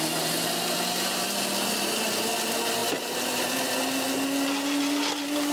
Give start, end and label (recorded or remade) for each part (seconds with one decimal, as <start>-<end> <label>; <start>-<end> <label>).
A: 0.0-5.5 recorded